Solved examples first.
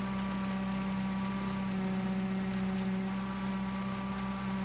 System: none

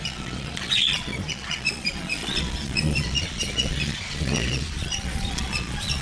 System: vocoder, Vocos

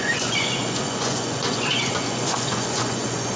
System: vocoder, Vocos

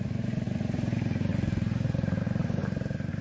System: none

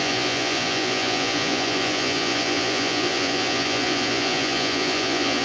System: vocoder, Vocos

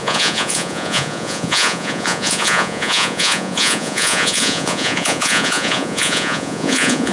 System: vocoder, Vocos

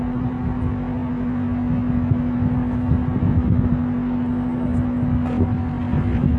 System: none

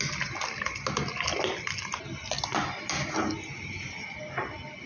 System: none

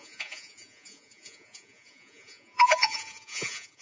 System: vocoder, Vocos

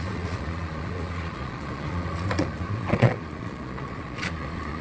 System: vocoder, Vocos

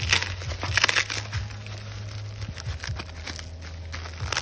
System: none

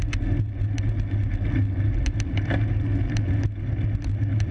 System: none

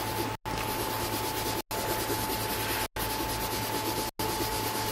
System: none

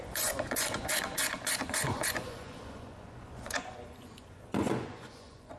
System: vocoder, Vocos